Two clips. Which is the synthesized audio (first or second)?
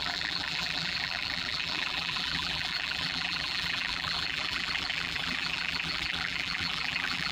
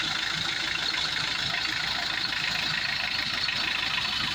first